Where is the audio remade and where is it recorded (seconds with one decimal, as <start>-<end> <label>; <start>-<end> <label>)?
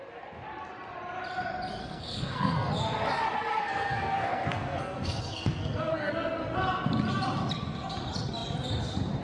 0.0-1.8 recorded; 1.8-2.7 remade; 2.7-3.5 recorded; 3.5-6.1 remade; 6.1-9.2 recorded